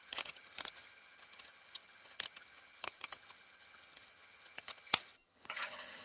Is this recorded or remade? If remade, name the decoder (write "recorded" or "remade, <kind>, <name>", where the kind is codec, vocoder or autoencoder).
remade, vocoder, HiFi-GAN